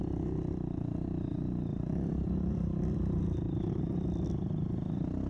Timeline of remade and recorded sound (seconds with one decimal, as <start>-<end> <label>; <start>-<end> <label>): 0.0-0.5 remade; 0.5-1.7 recorded; 1.7-4.5 remade; 4.5-5.3 recorded